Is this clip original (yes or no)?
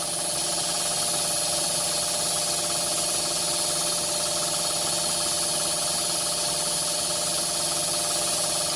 yes